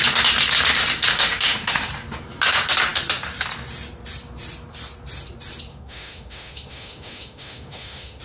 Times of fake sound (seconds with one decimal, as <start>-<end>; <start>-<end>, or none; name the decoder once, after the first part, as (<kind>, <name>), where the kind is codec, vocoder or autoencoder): 1.1-1.9 (autoencoder, DAC-VAE); 5.7-8.2